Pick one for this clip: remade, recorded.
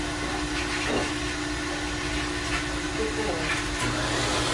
recorded